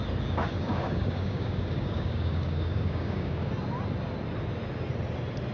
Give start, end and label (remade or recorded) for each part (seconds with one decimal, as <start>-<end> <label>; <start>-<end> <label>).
0.0-0.4 recorded; 0.4-3.5 remade; 3.5-5.5 recorded